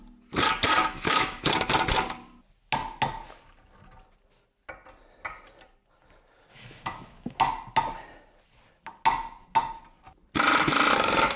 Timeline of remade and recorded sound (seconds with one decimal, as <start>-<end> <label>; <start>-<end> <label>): 0.0-0.8 recorded; 0.8-1.5 remade; 1.5-6.5 recorded; 6.5-7.4 remade; 7.4-11.4 recorded